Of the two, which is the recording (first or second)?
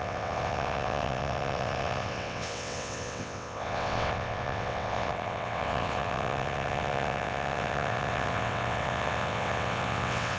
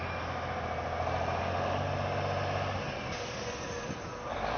second